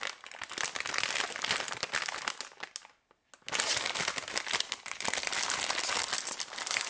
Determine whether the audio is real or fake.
real